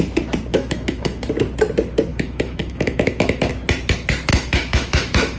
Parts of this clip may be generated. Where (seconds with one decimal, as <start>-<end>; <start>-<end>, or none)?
0.5-1.3; 2.1-3.5; 4.3-5.4